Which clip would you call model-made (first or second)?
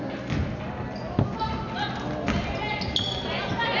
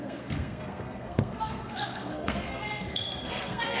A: second